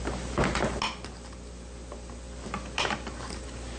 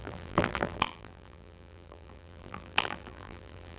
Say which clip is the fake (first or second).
second